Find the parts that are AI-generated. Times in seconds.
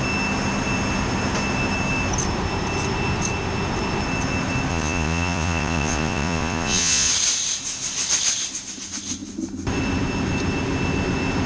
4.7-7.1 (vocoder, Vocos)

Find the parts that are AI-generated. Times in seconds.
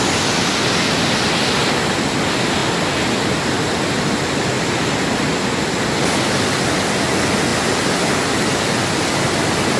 none